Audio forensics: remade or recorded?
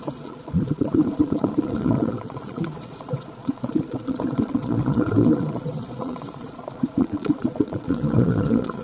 remade